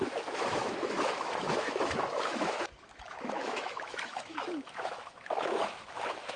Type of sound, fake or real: fake